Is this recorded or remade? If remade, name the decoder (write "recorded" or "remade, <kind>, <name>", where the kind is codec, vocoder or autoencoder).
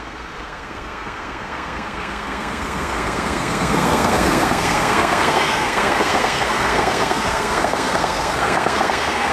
remade, codec, SNAC